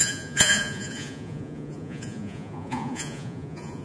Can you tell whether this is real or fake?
fake